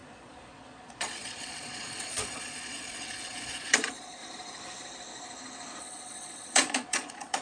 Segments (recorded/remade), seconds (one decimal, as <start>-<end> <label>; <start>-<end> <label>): 0.0-4.2 remade; 4.2-5.8 recorded; 5.8-7.4 remade